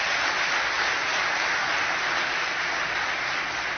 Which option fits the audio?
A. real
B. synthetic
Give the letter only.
A